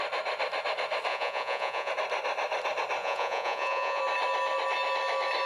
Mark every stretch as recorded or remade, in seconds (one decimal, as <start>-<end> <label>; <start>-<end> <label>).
0.0-1.1 recorded; 1.1-1.9 remade; 1.9-3.0 recorded; 3.0-4.0 remade; 4.0-5.5 recorded